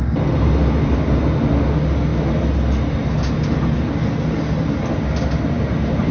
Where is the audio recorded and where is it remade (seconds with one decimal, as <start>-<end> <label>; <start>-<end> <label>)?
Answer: 0.0-6.1 recorded

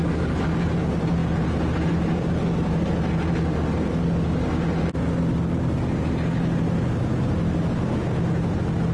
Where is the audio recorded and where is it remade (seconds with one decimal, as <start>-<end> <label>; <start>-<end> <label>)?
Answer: 0.0-8.9 recorded